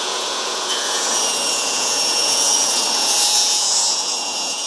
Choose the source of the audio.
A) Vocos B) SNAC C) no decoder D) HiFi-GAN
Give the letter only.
A